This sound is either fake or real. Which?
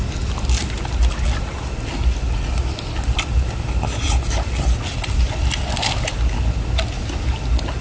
real